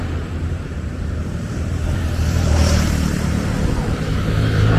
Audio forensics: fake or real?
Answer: fake